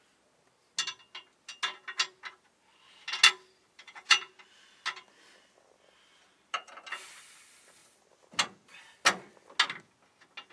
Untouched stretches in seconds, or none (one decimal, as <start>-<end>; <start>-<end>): 0.0-3.6; 4.3-10.5